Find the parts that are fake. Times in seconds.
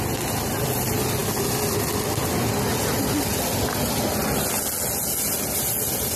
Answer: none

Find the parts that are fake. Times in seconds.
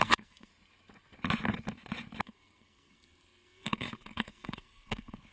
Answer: 0.0-0.5 (codec, SNAC); 2.2-5.3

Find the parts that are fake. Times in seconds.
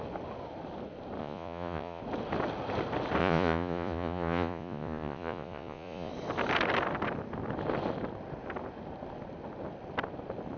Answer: 1.2-2.0 (vocoder, Vocos); 3.2-6.1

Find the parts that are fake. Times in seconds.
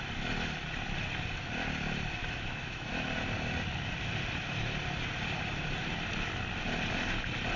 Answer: 2.2-2.9 (autoencoder, DAC-VAE)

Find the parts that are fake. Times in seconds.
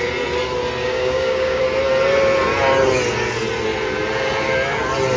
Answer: 0.8-1.6 (codec, DAC)